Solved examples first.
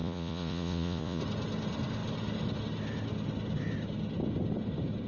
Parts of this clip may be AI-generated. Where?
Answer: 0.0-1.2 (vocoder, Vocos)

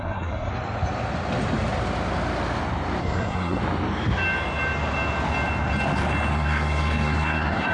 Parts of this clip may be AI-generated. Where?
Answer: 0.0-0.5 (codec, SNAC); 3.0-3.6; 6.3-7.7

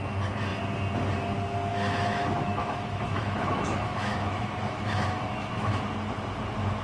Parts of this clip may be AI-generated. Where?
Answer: 1.7-5.8 (autoencoder, DAC-VAE)